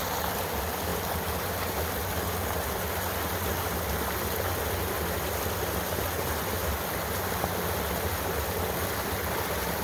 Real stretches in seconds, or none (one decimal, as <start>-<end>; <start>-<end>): 0.0-9.8